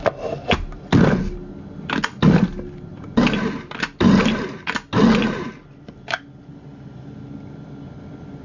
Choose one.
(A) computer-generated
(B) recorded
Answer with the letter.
B